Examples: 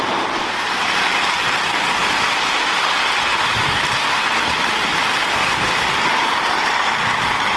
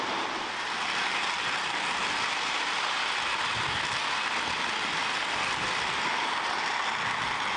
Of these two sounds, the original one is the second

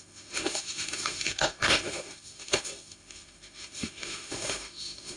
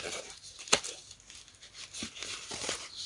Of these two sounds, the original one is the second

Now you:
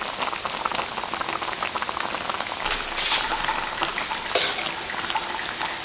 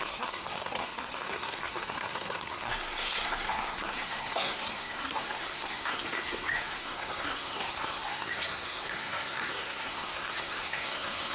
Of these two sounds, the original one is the first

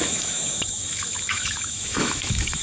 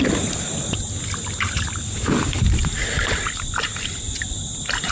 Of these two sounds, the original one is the second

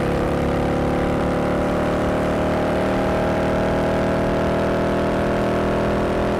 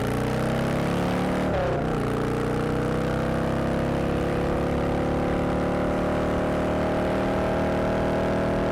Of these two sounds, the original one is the second